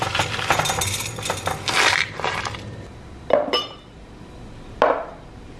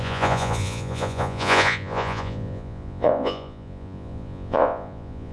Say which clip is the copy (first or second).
second